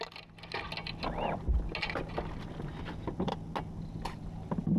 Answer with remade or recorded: recorded